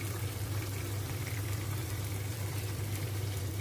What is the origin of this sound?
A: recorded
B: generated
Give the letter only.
B